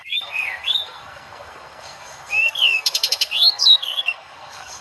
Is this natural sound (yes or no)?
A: no